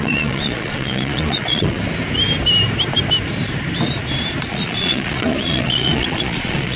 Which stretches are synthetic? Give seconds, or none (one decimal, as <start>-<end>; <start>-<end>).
0.0-1.8; 4.5-6.8